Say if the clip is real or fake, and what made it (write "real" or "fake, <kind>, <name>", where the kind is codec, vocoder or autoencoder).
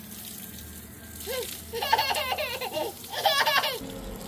real